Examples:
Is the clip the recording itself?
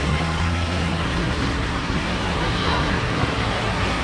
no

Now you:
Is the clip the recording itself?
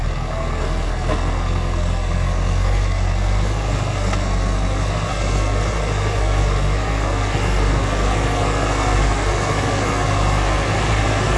no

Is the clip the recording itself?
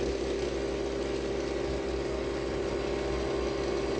yes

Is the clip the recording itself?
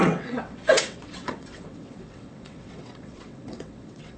no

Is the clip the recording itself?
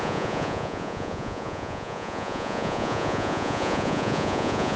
no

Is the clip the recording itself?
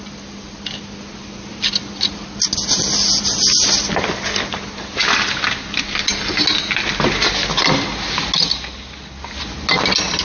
yes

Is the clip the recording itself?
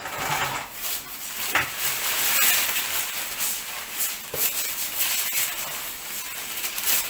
yes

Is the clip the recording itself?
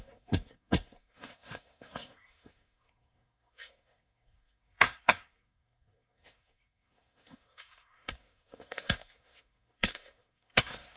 no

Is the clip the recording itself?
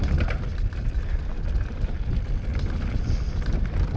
yes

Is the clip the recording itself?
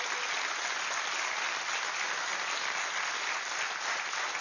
yes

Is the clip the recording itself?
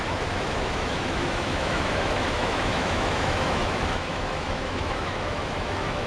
no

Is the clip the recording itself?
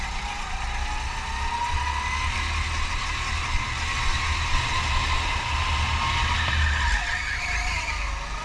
yes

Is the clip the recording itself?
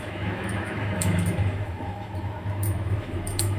no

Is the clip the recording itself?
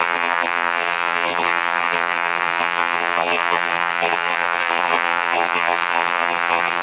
no